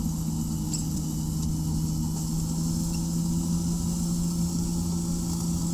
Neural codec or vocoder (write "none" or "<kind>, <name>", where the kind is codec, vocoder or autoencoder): none